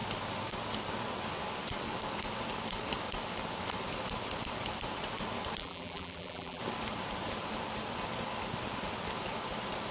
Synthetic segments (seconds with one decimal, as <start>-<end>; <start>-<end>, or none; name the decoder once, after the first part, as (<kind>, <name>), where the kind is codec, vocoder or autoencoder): 5.6-6.6 (vocoder, BigVGAN v2)